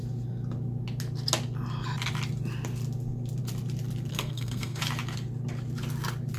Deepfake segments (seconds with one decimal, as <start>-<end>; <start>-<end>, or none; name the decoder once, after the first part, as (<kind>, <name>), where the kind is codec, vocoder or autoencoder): 4.1-4.8 (codec, SNAC)